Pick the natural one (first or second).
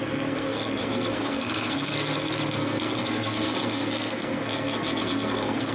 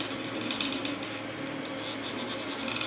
second